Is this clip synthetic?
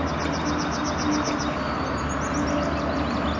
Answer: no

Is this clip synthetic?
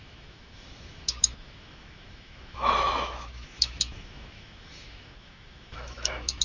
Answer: yes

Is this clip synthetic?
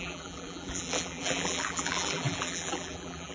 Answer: yes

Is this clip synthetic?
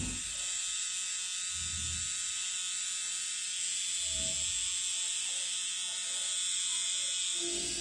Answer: no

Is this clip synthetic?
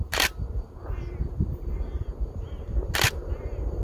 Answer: yes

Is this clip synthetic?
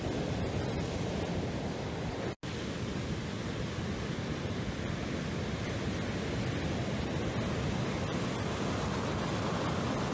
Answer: no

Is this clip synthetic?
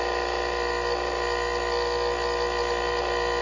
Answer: no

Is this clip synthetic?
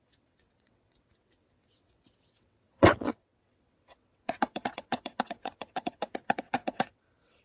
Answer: yes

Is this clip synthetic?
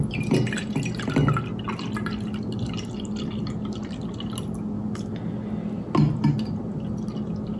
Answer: no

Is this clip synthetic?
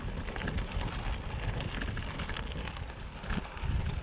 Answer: no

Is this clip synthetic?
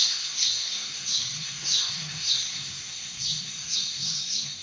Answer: yes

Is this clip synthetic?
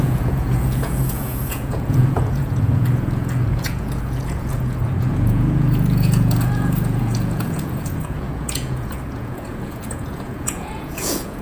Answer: yes